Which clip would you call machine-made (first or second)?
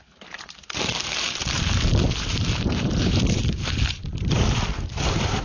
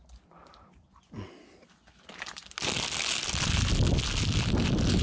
first